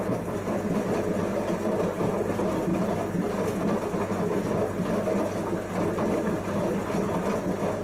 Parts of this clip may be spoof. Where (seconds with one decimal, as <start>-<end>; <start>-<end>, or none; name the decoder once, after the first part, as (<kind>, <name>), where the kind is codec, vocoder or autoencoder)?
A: none